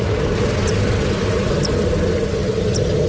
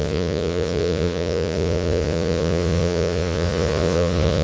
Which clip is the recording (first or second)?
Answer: first